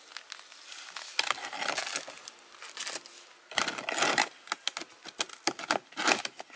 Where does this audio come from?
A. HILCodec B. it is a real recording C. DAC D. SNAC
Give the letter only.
B